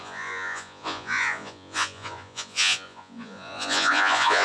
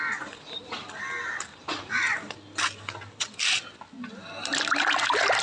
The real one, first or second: second